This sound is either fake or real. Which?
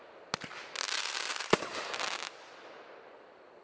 real